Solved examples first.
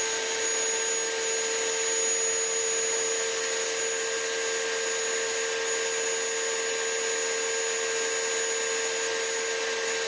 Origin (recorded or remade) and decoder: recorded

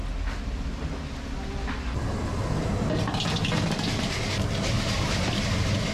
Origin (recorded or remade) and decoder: recorded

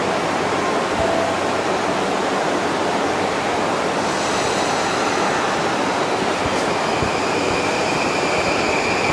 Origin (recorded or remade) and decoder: recorded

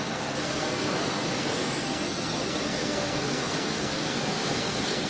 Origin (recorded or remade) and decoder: remade, codec, SNAC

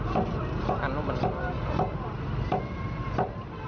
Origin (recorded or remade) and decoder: remade, vocoder, BigVGAN v2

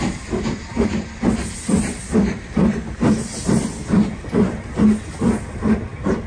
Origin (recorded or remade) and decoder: recorded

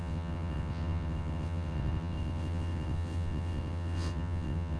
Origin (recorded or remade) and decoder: remade, vocoder, WaveNeXt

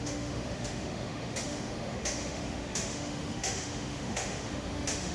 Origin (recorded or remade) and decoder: remade, autoencoder, DAC-VAE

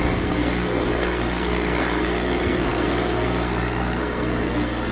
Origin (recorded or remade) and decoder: remade, codec, SNAC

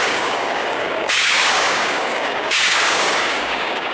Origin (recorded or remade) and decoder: remade, codec, DAC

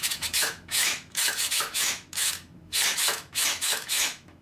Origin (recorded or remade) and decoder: remade, autoencoder, DAC-VAE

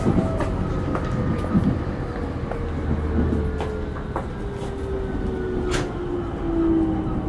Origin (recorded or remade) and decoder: recorded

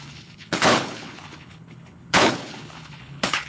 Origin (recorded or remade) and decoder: remade, codec, HILCodec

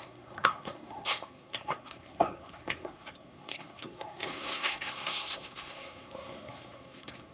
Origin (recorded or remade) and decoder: remade, codec, SNAC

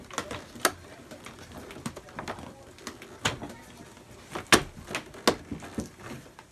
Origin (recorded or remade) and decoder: recorded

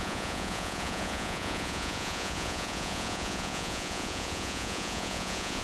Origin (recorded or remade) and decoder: remade, vocoder, Vocos